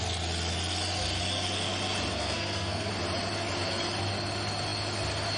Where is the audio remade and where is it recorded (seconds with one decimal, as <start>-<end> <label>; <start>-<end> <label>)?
0.0-2.1 recorded; 2.1-2.9 remade; 2.9-5.4 recorded